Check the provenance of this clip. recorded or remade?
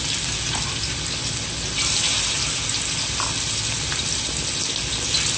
recorded